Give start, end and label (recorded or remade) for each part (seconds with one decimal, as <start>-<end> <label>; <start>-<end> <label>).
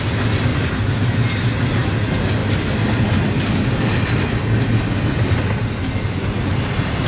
0.0-7.1 recorded